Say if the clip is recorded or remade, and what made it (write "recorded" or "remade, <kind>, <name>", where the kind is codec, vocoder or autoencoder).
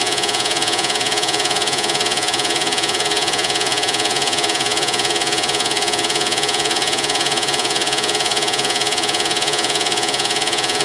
remade, vocoder, Vocos